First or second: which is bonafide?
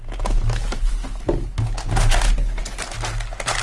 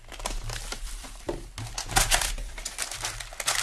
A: first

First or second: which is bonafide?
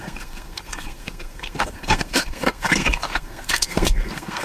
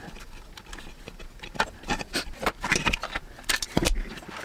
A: second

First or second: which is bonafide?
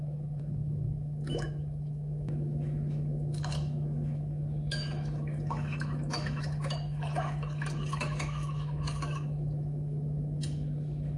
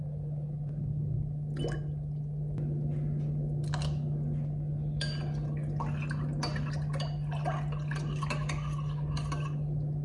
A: second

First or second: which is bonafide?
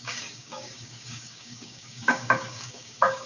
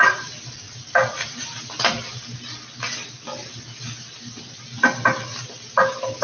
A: second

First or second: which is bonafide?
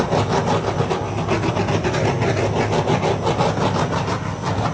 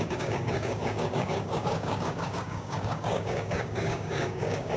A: first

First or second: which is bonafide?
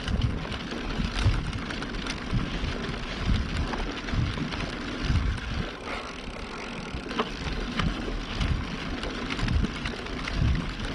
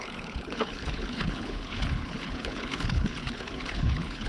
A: first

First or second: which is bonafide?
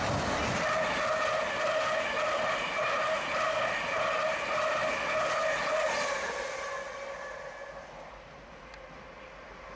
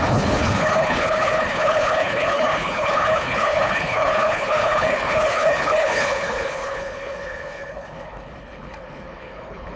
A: first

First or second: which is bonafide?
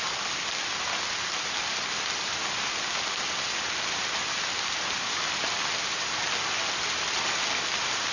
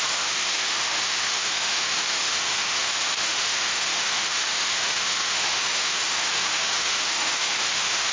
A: first